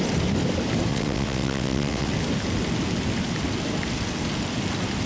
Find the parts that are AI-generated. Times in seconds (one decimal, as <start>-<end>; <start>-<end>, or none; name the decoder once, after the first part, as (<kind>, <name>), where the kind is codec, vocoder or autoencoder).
0.9-2.1 (vocoder, WaveNeXt)